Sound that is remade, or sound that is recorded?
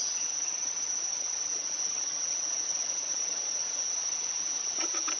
remade